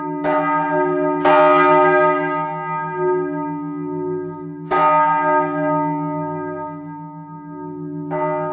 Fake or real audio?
real